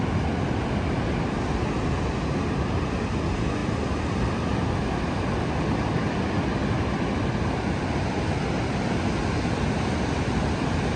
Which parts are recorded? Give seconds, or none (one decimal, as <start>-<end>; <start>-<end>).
0.0-11.0